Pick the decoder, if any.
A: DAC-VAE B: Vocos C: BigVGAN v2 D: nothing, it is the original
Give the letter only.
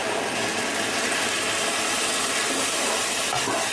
D